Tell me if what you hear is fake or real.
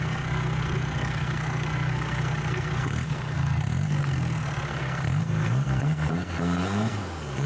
fake